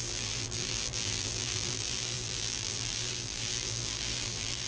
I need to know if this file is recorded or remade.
remade